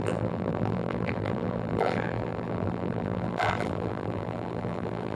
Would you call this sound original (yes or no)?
no